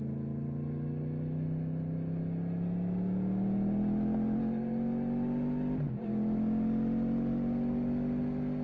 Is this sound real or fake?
real